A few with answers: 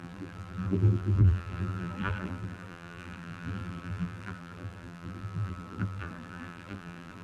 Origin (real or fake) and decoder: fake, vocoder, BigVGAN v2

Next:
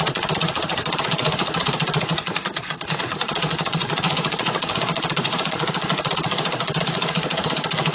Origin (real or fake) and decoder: fake, vocoder, Vocos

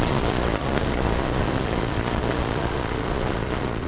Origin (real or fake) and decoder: fake, vocoder, Vocos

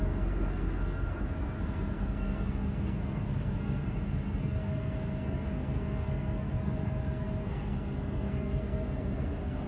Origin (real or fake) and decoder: fake, codec, SNAC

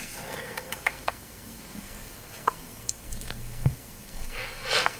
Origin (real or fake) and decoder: fake, codec, SNAC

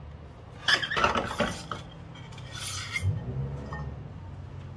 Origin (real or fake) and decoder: real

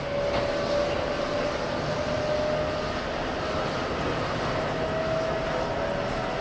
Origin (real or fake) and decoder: real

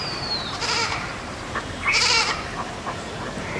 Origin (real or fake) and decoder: fake, vocoder, BigVGAN v2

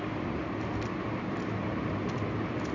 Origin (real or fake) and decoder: real